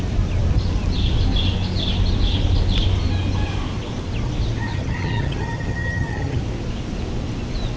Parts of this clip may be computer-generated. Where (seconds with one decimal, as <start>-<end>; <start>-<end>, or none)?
4.7-6.4